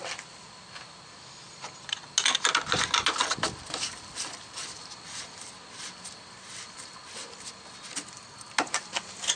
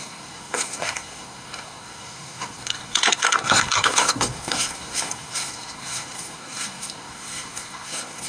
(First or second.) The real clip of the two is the first